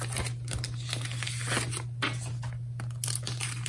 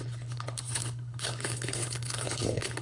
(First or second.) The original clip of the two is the first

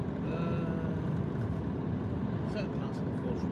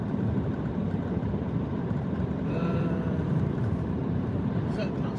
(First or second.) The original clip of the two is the first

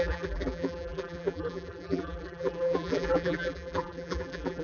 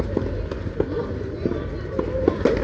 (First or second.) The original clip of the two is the second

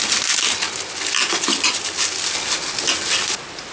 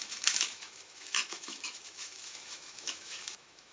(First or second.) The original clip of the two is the first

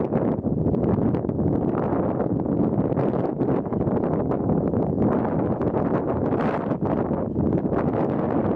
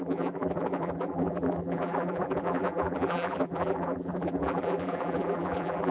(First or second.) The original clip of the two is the first